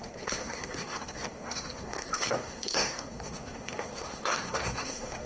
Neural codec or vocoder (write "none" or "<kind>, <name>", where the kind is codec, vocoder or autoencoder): codec, SNAC